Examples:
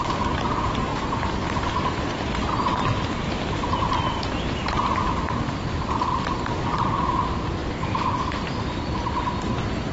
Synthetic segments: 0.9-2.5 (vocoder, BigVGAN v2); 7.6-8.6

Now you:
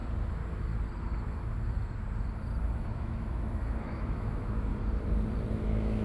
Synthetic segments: 2.9-4.7 (autoencoder, DAC-VAE); 5.5-6.0

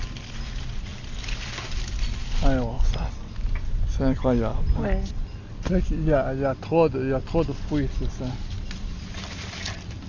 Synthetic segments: none